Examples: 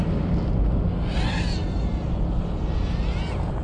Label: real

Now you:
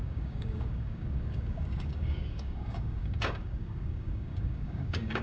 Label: fake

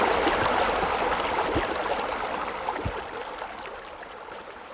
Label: real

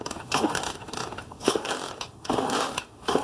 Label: fake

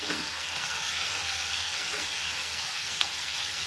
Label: fake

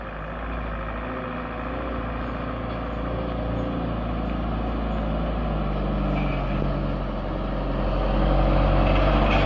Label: real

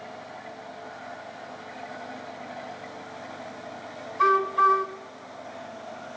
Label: real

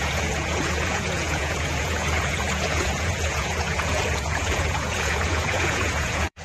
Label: fake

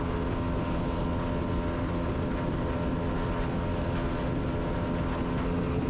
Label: real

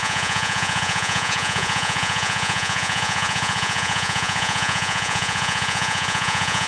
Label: fake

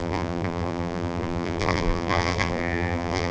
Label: fake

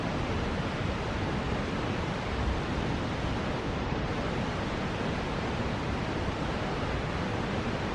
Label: real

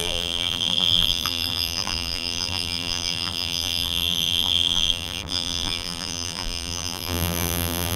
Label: fake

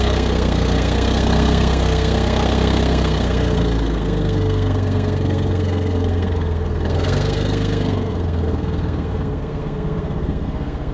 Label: fake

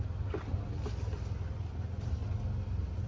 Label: real